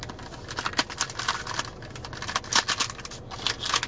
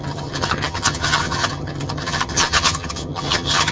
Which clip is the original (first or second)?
first